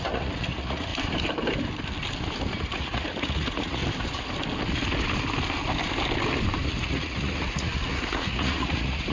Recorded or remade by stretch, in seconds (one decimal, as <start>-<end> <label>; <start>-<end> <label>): 0.0-0.9 remade; 0.9-2.7 recorded; 2.7-3.8 remade; 3.8-6.8 recorded; 6.8-9.1 remade